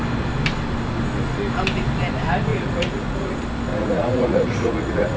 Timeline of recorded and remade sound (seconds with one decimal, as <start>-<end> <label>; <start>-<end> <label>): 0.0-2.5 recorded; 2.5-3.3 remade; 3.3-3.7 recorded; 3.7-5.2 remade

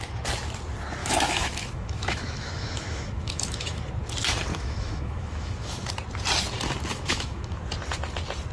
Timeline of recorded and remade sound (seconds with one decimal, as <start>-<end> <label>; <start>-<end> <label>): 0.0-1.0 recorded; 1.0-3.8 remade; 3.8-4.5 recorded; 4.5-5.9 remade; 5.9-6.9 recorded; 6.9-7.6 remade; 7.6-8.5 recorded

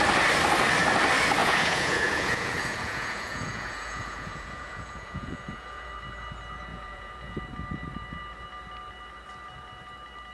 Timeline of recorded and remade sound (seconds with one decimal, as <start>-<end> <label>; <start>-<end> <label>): 0.0-1.4 recorded; 1.4-5.9 remade; 5.9-6.7 recorded; 6.7-7.4 remade; 7.4-10.3 recorded